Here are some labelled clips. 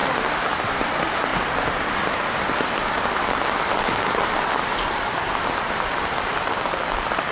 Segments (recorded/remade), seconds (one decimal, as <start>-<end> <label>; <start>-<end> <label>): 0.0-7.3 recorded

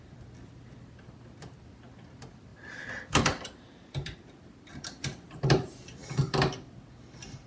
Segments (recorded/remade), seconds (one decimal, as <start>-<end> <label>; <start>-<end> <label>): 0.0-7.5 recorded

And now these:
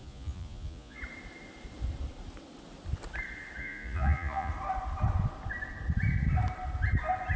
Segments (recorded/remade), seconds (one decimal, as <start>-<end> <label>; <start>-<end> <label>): 0.0-1.0 remade; 1.0-3.6 recorded; 3.6-4.5 remade; 4.5-7.4 recorded